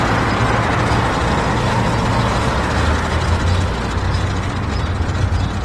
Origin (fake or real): real